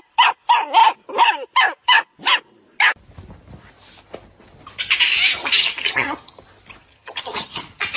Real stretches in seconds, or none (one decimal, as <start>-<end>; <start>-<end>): 0.0-5.4; 6.4-6.9; 7.6-8.0